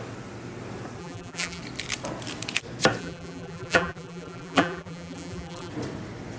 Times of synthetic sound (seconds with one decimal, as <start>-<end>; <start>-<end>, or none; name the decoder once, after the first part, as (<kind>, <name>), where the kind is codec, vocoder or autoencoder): 1.0-1.6 (vocoder, BigVGAN v2); 3.0-5.7